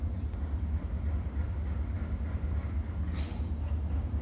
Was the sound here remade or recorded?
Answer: recorded